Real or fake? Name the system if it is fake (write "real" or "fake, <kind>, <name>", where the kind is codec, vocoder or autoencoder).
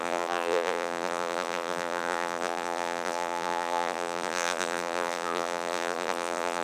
fake, vocoder, BigVGAN v2